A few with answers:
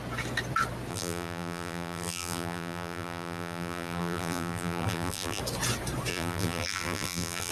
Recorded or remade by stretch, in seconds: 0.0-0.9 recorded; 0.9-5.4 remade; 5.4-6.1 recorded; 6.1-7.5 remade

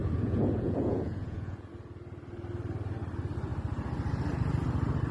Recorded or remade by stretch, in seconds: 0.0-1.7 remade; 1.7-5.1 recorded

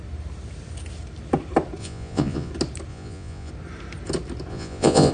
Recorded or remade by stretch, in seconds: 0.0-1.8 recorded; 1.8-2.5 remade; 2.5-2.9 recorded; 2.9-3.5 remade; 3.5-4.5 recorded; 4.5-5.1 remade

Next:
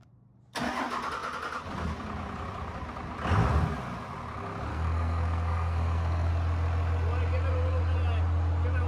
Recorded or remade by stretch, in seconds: 0.0-4.7 recorded; 4.7-6.3 remade; 6.3-8.9 recorded